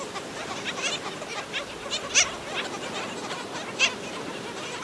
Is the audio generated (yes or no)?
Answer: no